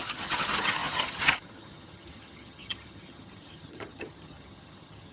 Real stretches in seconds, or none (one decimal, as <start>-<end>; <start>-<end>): none